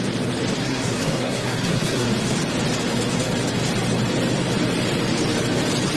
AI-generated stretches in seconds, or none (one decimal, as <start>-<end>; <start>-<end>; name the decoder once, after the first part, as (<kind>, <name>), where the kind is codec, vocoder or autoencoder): 0.6-2.1 (codec, SNAC)